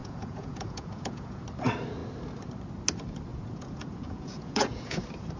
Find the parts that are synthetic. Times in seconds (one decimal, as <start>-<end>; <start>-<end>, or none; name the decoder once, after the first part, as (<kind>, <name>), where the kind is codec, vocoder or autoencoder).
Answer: 0.0-1.4 (vocoder, Vocos); 3.3-5.0